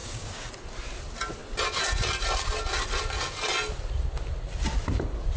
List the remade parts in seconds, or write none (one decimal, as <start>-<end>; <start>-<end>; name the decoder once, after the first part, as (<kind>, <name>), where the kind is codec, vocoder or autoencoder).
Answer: 0.0-0.5 (codec, DAC)